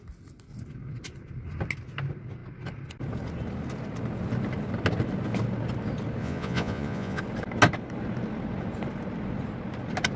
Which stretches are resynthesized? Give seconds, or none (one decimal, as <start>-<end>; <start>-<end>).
6.2-7.2